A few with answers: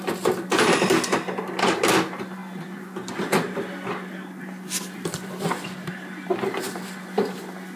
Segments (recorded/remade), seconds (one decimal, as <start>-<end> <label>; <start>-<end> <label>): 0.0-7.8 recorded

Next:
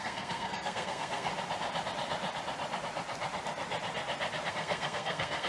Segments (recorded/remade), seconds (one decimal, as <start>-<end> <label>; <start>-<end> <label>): 0.0-1.3 remade; 1.3-4.5 recorded; 4.5-5.5 remade

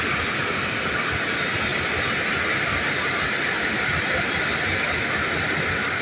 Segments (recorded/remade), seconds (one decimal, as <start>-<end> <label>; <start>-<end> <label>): 0.0-6.0 recorded

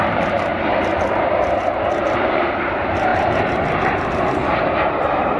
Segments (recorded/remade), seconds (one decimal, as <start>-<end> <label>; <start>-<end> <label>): 0.0-0.5 remade; 0.5-2.0 recorded; 2.0-5.4 remade

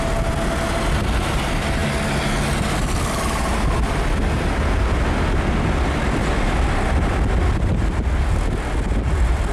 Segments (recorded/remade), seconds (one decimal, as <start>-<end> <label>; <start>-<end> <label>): 0.0-9.5 recorded